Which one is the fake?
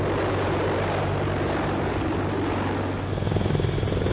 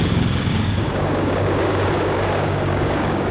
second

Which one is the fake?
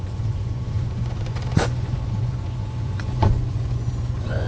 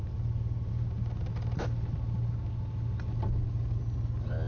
first